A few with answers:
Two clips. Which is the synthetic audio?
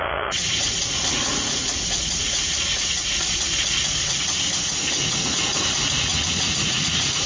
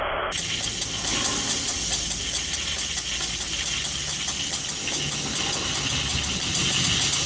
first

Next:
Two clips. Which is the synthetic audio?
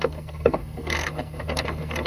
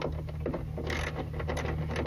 first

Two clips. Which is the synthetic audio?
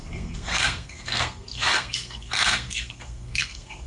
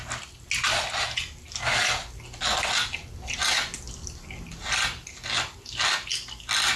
first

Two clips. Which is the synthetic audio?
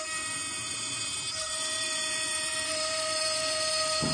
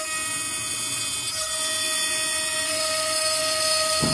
first